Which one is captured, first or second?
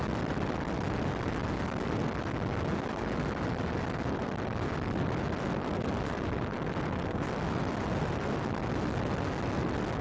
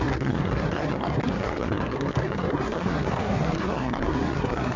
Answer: first